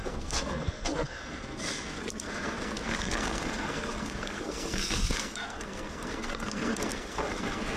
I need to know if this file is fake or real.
fake